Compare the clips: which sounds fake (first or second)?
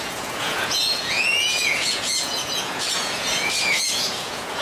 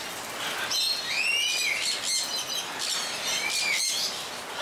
first